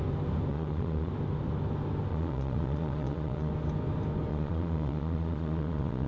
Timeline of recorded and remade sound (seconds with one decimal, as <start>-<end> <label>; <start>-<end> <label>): 0.0-0.5 recorded; 0.5-1.1 remade; 1.1-2.1 recorded; 2.1-3.5 remade; 3.5-4.3 recorded; 4.3-6.1 remade